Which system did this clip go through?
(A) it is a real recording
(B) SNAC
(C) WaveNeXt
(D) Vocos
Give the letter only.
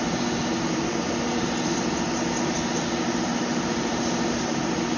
A